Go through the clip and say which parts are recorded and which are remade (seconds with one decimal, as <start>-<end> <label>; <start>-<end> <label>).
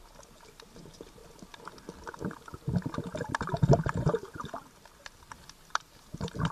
0.0-1.2 remade; 1.2-4.0 recorded; 4.0-4.4 remade; 4.4-5.7 recorded; 5.7-6.5 remade